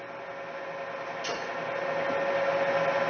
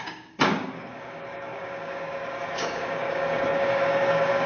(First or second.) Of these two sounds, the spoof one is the second